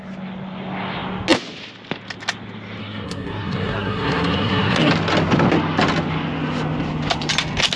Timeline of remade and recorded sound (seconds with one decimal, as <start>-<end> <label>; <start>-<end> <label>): 0.0-2.8 recorded; 2.8-4.9 remade; 4.9-7.8 recorded